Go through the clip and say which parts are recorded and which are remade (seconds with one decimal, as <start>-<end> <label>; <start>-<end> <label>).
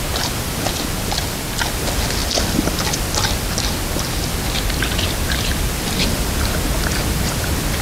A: 0.0-7.8 recorded